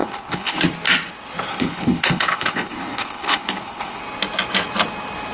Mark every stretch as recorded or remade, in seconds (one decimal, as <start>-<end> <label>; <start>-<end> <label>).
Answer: 0.0-0.6 remade; 0.6-1.5 recorded; 1.5-4.0 remade; 4.0-5.3 recorded